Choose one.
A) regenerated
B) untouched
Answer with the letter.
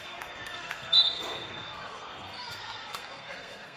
A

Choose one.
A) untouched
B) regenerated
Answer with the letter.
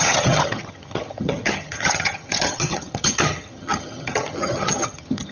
B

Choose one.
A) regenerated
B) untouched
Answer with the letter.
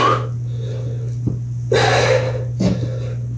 B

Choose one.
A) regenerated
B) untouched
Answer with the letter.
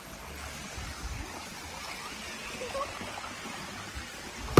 B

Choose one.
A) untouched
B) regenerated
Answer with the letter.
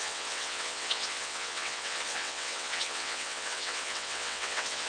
B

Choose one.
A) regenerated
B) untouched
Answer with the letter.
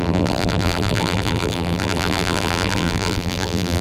A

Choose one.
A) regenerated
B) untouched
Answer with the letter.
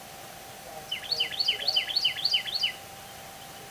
B